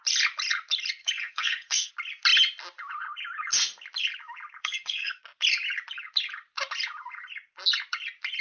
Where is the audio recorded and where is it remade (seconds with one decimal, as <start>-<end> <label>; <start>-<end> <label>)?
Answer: 0.0-1.0 recorded; 1.0-1.9 remade; 1.9-4.6 recorded; 4.6-5.2 remade; 5.2-8.4 recorded